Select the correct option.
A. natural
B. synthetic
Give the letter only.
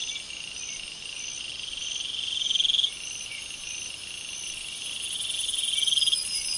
A